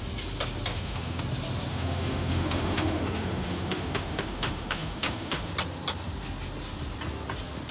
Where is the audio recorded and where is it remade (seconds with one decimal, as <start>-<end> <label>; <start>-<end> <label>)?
0.0-0.7 recorded; 0.7-1.2 remade; 1.2-1.7 recorded; 1.7-5.5 remade; 5.5-7.7 recorded